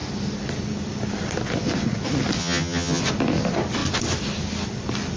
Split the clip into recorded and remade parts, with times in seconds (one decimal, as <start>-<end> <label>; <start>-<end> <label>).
0.0-2.4 recorded; 2.4-3.0 remade; 3.0-5.2 recorded